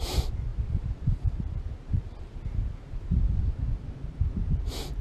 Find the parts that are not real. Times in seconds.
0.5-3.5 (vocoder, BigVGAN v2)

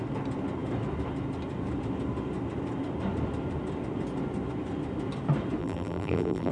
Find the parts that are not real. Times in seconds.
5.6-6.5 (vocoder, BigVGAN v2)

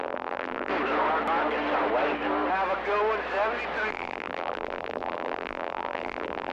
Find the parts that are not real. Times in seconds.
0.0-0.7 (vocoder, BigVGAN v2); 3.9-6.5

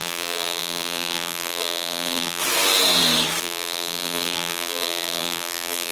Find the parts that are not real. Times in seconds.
0.0-2.4 (vocoder, BigVGAN v2); 3.4-5.9

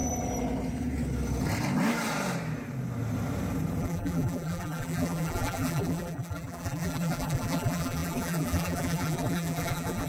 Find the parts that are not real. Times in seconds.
3.8-10.1 (vocoder, BigVGAN v2)